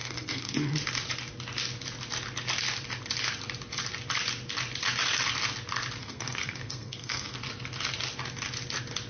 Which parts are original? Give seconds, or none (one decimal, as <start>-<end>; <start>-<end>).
0.7-6.0; 7.4-9.1

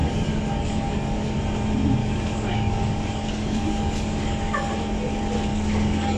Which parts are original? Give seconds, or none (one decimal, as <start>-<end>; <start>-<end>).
1.4-2.0; 4.7-5.5

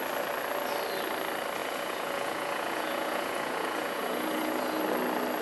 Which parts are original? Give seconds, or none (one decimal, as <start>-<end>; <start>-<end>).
0.0-1.6; 4.8-5.4

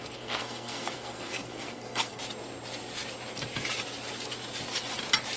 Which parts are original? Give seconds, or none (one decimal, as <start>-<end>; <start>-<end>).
2.2-5.4

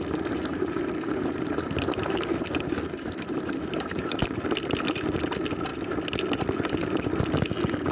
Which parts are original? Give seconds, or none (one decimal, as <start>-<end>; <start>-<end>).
0.0-0.5; 4.2-7.9

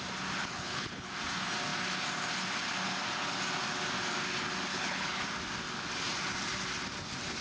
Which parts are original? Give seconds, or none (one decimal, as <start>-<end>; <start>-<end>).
0.0-0.4; 1.1-4.7; 5.2-7.4